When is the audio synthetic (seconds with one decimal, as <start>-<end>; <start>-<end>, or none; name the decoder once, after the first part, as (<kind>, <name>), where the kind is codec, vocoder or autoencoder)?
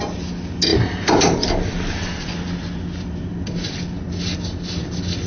0.7-2.3 (vocoder, BigVGAN v2)